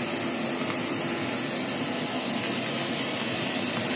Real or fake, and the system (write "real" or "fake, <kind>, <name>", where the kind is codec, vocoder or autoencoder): real